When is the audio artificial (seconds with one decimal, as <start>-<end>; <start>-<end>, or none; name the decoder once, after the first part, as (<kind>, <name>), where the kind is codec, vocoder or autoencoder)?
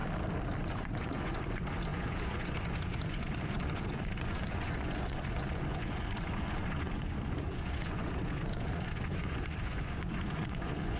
0.6-11.0 (vocoder, Vocos)